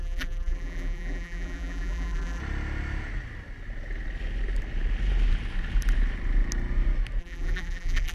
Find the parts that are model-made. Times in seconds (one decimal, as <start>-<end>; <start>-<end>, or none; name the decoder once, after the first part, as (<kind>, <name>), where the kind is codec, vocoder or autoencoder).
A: 0.0-2.4 (vocoder, BigVGAN v2); 7.2-8.1